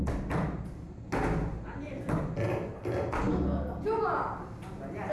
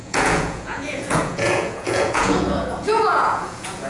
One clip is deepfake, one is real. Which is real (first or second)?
first